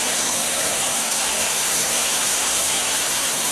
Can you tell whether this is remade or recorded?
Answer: remade